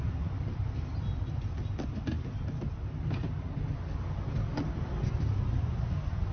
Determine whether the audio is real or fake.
real